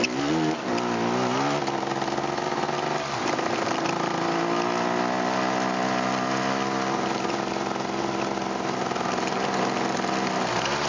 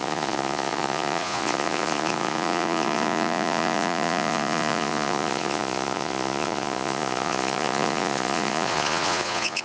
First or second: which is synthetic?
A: second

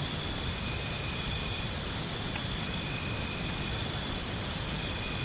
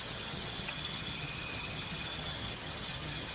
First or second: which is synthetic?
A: second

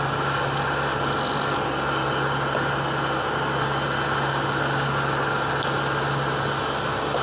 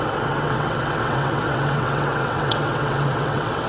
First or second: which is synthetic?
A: second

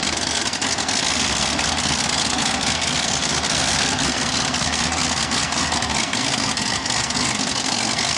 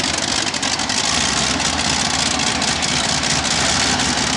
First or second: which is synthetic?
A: first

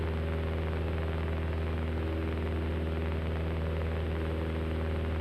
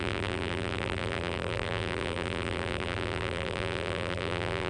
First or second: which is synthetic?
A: second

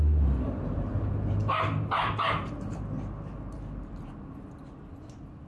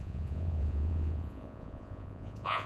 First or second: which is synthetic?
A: second